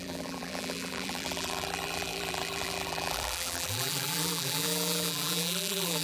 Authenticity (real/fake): fake